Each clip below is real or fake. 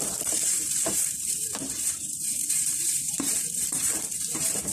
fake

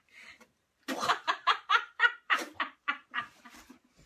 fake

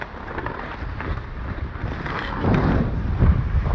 real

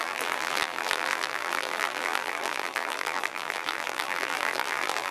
fake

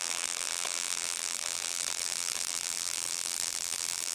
fake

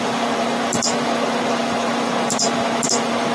fake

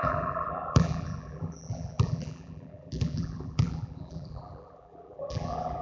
fake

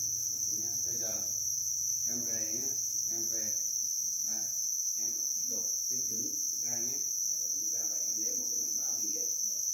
real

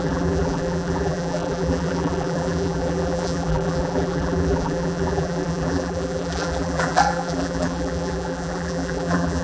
fake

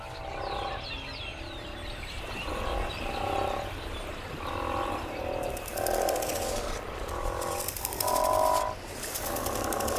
fake